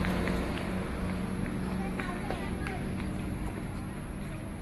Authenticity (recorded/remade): recorded